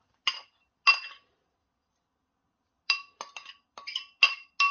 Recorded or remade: recorded